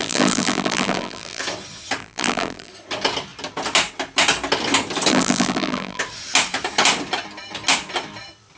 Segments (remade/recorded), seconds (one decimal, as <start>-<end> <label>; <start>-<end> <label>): 0.0-1.4 remade; 1.4-2.0 recorded; 2.0-2.7 remade; 2.7-5.1 recorded; 5.1-6.0 remade; 6.0-8.6 recorded